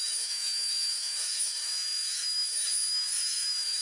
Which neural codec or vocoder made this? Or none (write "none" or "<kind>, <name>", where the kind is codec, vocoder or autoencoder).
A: autoencoder, DAC-VAE